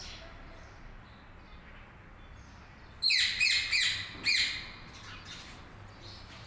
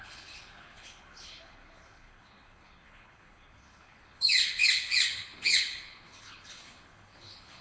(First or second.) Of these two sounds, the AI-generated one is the second